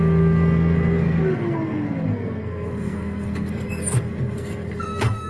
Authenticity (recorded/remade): remade